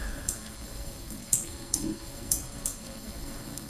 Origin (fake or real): fake